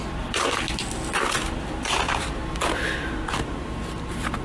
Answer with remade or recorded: remade